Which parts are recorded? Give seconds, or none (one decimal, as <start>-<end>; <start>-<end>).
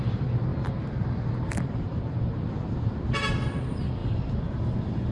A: 0.0-4.0